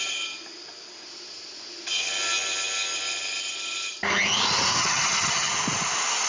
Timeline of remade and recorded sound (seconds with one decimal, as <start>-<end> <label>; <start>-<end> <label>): 0.0-4.8 recorded; 4.8-5.5 remade; 5.5-6.3 recorded